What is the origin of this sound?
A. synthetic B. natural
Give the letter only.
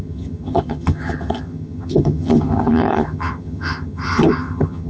A